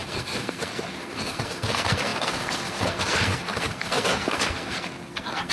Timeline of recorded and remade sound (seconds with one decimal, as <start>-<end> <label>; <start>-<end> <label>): 0.0-5.5 remade